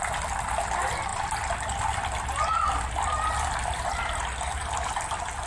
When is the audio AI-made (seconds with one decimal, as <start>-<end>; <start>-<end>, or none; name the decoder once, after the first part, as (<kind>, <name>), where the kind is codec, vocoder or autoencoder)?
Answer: none